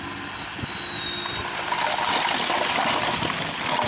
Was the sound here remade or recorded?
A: recorded